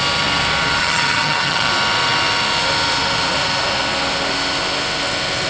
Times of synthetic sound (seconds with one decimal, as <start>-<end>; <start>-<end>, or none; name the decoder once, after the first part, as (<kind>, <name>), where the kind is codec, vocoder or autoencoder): 0.8-1.7 (vocoder, HiFi-GAN)